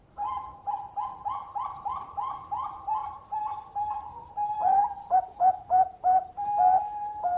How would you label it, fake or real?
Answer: fake